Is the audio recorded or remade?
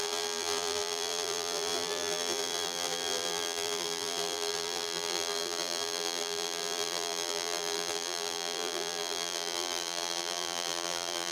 remade